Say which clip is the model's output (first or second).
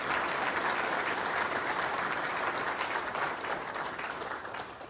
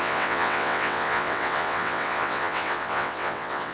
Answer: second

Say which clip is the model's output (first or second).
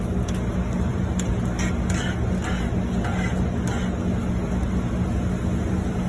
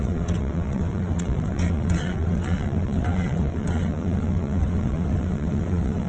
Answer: second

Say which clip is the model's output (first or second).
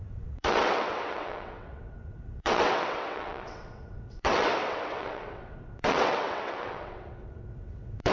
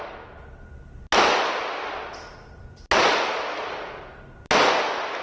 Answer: first